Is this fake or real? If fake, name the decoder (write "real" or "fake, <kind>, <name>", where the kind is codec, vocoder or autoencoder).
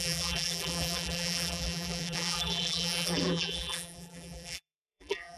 fake, vocoder, BigVGAN v2